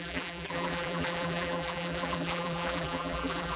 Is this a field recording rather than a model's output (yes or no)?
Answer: no